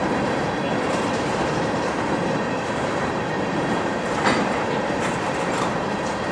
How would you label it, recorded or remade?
remade